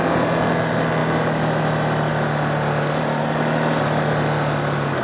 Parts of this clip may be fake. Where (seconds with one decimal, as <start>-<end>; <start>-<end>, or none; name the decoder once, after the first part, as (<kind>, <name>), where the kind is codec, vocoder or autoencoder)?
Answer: none